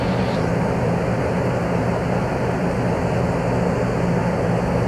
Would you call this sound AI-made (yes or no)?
yes